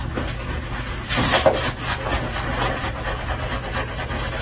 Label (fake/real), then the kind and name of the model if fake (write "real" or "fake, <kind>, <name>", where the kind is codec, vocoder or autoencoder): real